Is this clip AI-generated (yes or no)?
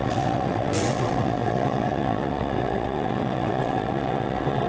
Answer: yes